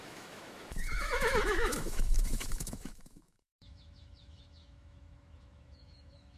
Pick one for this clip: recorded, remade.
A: remade